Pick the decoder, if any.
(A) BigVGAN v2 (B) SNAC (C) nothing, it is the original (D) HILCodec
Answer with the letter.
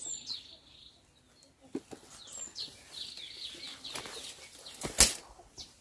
C